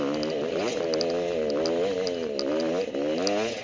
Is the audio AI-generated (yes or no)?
no